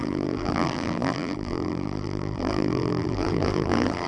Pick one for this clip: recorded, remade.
remade